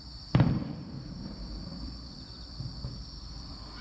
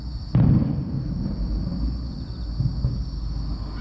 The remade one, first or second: first